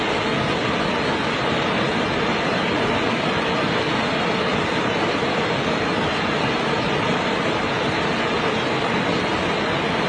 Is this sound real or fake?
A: real